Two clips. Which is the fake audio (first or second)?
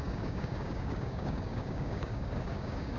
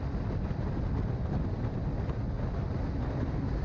first